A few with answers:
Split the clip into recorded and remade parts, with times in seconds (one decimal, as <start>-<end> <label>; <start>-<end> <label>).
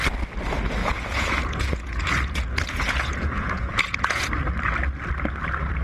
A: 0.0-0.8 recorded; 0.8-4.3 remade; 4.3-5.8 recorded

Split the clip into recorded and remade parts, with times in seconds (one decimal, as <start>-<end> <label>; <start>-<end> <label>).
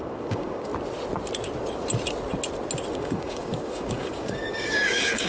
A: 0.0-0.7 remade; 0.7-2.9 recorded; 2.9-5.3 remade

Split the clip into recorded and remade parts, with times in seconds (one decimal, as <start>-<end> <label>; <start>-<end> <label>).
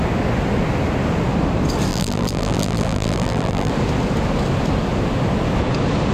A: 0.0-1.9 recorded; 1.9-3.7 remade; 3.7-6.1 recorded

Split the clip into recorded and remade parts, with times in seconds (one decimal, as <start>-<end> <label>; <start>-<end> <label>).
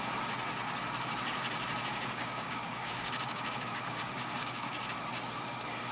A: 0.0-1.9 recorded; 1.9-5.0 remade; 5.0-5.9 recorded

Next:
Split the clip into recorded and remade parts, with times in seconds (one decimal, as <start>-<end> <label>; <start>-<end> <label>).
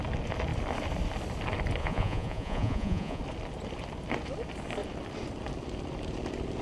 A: 0.0-1.8 recorded; 1.8-3.2 remade; 3.2-6.6 recorded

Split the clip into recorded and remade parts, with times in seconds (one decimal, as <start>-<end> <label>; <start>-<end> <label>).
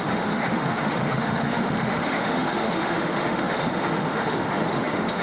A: 0.0-5.2 remade